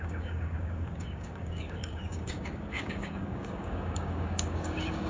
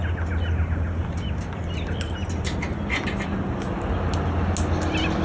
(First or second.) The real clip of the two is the second